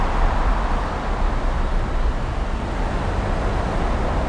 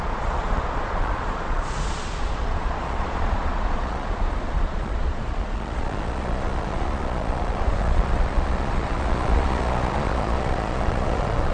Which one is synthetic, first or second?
second